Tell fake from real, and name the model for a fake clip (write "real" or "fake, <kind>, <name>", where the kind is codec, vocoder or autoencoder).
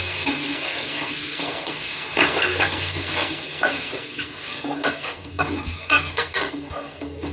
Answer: fake, codec, SNAC